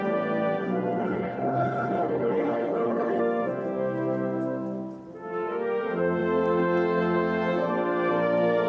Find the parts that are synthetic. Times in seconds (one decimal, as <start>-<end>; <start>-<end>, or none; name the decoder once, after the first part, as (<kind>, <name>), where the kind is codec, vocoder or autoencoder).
1.0-3.2 (codec, HILCodec)